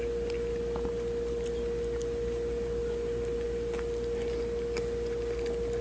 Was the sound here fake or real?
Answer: real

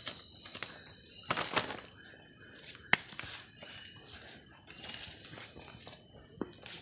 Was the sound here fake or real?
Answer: real